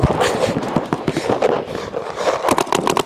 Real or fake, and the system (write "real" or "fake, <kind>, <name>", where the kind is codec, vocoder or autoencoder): real